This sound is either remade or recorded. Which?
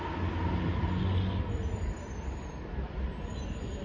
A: recorded